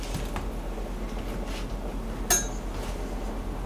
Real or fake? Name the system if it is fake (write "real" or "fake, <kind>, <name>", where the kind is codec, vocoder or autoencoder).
real